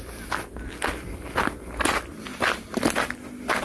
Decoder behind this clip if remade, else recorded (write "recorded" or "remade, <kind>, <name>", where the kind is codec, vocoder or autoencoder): recorded